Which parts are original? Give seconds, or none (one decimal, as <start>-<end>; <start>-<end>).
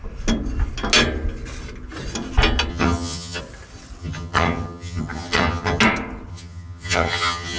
0.0-2.7; 3.4-4.0; 5.8-6.3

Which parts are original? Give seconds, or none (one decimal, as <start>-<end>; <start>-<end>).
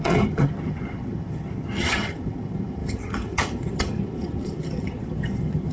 none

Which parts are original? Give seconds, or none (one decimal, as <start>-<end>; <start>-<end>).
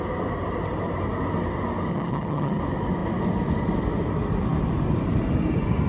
0.0-1.9; 2.6-5.9